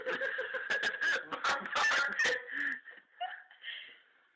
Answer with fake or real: real